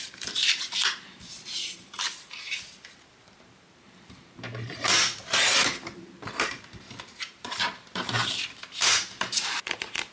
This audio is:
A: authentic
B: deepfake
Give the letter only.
B